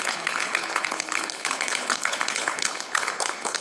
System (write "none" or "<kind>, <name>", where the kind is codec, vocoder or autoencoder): codec, HILCodec